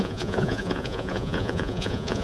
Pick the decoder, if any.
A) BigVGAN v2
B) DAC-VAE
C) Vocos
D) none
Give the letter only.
C